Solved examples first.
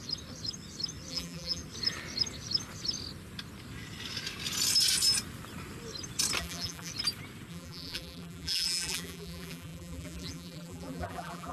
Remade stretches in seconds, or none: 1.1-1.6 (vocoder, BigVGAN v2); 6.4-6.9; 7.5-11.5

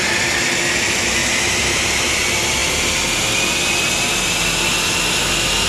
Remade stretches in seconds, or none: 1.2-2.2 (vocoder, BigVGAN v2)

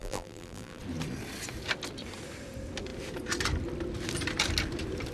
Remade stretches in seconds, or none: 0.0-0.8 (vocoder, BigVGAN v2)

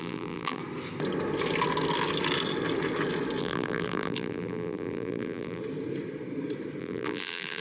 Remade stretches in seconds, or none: 0.0-0.6 (vocoder, BigVGAN v2); 3.4-5.6; 6.8-7.6